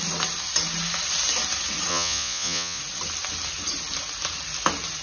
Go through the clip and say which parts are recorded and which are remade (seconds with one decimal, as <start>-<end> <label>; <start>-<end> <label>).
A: 0.0-1.9 recorded; 1.9-2.8 remade; 2.8-5.0 recorded